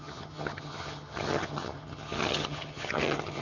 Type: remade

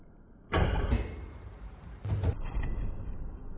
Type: remade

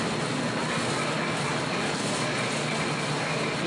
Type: recorded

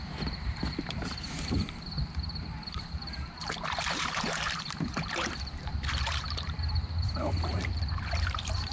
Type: remade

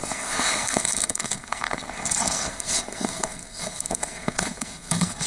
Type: remade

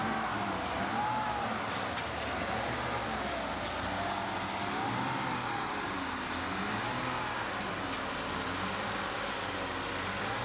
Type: recorded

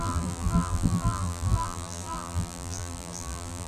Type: remade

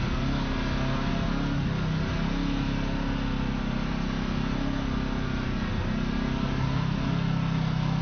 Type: recorded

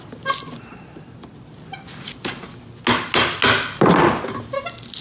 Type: recorded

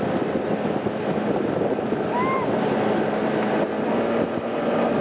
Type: recorded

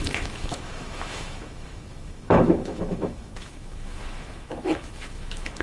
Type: remade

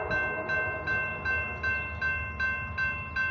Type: recorded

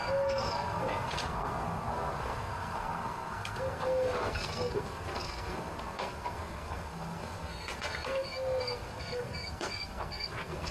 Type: remade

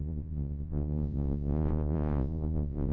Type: remade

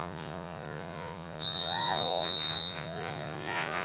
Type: remade